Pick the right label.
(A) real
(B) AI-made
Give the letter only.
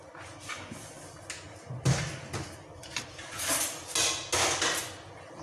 A